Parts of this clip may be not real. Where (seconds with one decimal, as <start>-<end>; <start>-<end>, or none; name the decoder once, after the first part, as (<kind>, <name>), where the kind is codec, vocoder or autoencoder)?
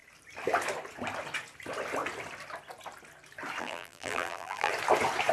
3.6-4.7 (vocoder, BigVGAN v2)